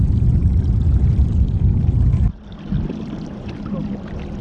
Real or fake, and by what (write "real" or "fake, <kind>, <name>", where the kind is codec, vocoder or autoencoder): real